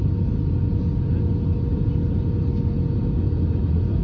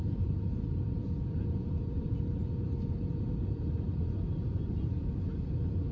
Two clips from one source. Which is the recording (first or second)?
first